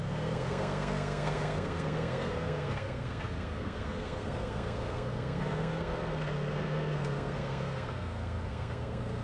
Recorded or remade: remade